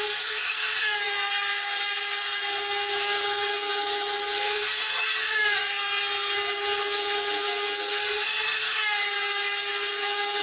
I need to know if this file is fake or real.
fake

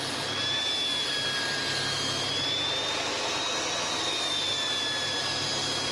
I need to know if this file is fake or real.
real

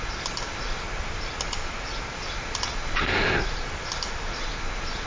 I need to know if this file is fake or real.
real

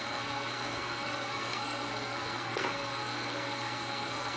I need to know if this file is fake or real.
fake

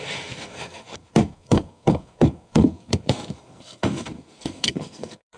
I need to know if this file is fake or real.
fake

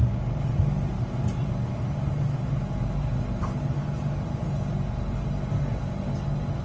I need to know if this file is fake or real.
real